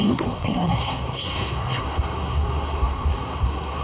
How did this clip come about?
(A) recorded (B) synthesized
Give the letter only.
B